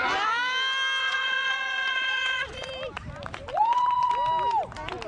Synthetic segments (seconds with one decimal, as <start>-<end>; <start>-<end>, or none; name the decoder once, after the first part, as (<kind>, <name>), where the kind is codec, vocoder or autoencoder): 1.0-2.7 (vocoder, Vocos); 3.5-4.1